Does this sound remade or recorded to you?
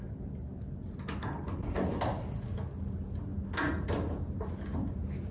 recorded